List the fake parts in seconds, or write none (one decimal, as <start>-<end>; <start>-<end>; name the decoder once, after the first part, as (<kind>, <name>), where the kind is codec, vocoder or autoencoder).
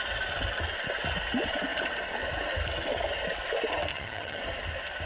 3.9-4.4 (vocoder, HiFi-GAN)